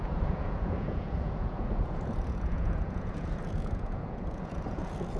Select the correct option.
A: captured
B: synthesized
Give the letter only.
B